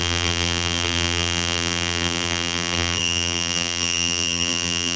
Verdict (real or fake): fake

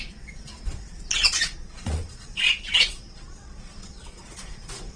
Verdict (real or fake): fake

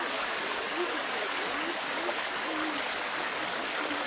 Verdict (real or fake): fake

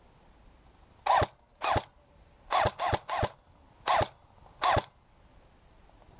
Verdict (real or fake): real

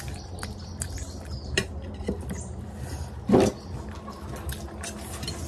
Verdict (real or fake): real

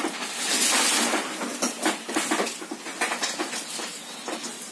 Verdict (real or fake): real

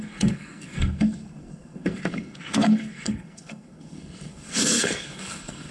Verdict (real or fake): fake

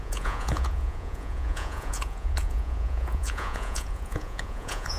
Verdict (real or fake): fake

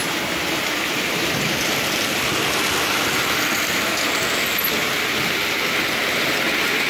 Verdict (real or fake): real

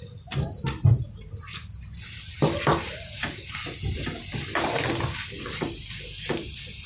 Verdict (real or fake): real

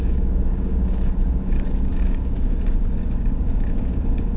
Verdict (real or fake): fake